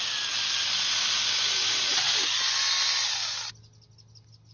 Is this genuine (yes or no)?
yes